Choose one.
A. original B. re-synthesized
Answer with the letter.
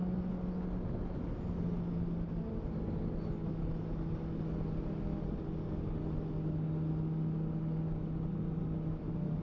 A